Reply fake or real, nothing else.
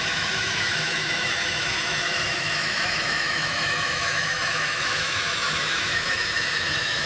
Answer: fake